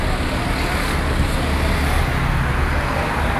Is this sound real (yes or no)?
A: yes